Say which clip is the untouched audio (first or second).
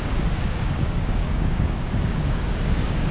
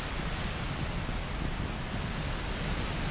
second